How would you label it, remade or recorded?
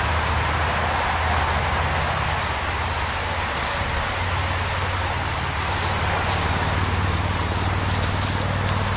recorded